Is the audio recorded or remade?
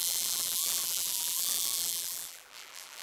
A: remade